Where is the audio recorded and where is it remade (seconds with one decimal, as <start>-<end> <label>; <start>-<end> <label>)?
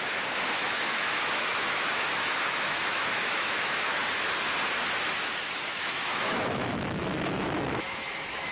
0.0-4.0 remade; 4.0-5.1 recorded; 5.1-8.5 remade